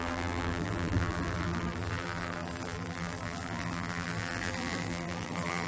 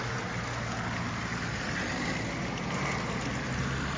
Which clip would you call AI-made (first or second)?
first